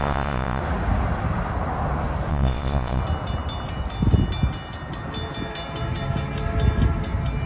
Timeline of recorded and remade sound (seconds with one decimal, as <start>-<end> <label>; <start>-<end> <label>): 0.0-0.6 remade; 0.6-2.3 recorded; 2.3-3.0 remade; 3.0-7.5 recorded